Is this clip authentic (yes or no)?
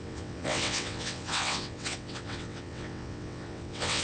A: no